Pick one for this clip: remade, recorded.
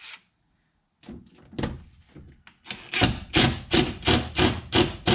recorded